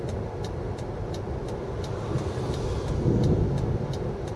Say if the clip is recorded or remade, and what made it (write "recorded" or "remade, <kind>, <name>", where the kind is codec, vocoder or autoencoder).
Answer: recorded